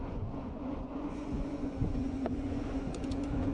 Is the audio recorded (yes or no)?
no